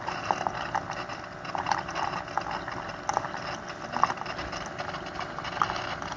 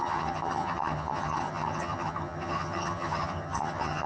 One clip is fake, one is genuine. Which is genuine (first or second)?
first